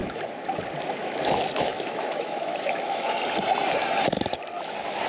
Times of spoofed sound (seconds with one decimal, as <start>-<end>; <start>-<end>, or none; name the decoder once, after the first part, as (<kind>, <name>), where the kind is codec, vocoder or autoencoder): 0.0-0.6 (autoencoder, DAC-VAE); 1.0-3.1